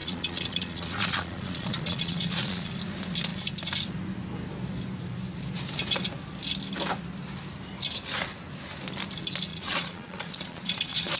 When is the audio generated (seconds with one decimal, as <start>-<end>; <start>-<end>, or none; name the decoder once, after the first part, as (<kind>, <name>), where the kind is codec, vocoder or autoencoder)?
0.0-2.7 (vocoder, Vocos); 9.5-11.2